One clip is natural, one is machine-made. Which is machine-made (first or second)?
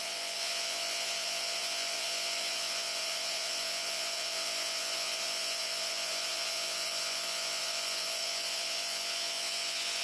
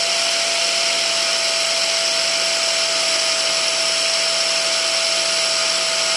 first